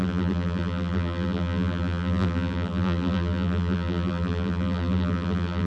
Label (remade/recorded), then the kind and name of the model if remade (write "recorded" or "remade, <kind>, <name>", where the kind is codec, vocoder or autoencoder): remade, vocoder, BigVGAN v2